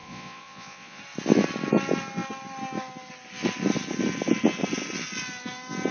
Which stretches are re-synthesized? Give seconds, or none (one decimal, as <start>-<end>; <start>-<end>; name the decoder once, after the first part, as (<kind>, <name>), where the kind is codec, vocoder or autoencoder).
0.0-1.0 (vocoder, Vocos)